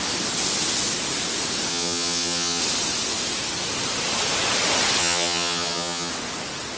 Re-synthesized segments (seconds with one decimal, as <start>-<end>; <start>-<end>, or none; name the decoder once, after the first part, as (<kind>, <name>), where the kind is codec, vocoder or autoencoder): 1.7-2.6 (vocoder, HiFi-GAN); 5.0-6.1